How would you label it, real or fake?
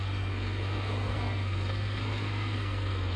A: fake